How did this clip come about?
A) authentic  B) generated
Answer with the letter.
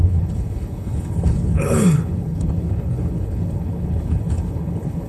B